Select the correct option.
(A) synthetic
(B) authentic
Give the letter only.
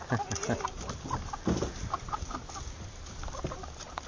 B